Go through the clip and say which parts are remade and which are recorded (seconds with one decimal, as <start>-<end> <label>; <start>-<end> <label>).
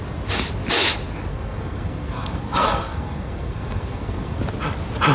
0.0-1.3 recorded; 1.3-4.4 remade; 4.4-5.1 recorded